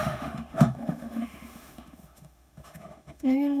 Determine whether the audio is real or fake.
fake